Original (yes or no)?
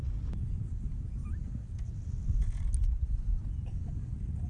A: yes